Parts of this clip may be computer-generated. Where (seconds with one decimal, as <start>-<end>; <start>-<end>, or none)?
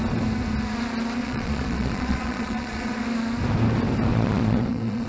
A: 1.2-2.9; 4.1-5.1